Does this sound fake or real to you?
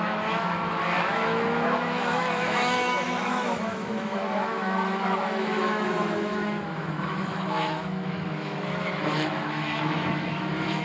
fake